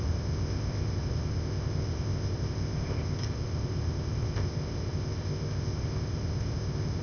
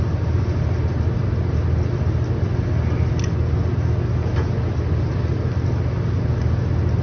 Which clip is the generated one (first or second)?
first